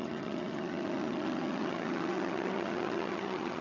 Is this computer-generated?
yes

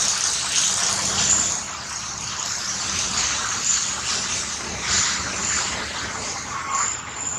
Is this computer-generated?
yes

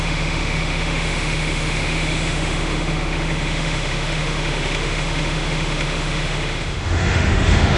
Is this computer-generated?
yes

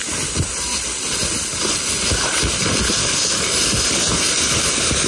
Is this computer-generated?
no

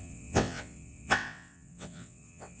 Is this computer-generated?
yes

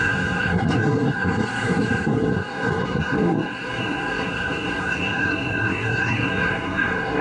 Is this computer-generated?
yes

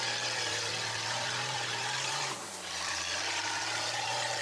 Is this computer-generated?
yes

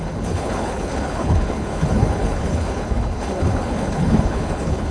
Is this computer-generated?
yes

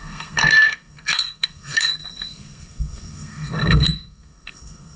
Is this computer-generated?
yes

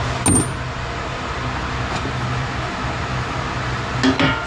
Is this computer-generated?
no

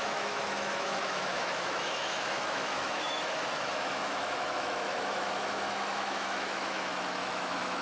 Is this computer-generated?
yes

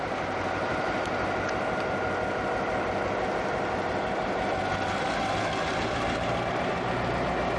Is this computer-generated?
no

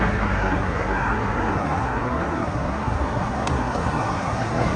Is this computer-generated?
yes